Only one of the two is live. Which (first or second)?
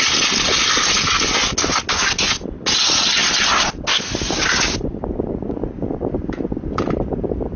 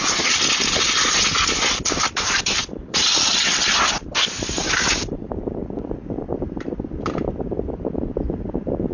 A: first